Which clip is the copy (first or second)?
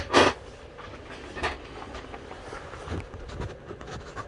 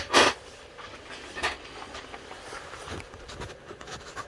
second